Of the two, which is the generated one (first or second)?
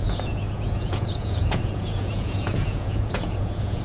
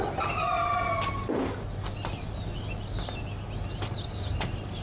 first